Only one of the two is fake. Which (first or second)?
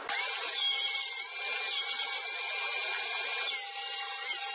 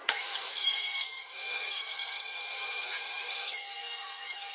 second